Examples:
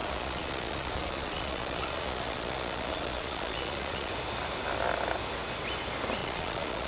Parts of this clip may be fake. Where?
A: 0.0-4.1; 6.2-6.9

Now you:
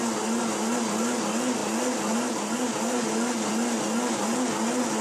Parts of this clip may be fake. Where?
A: none

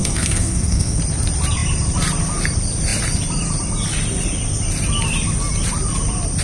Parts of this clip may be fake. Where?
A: 0.0-1.0